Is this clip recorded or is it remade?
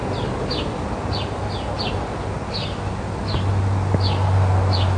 recorded